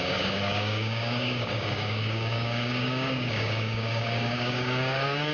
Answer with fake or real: fake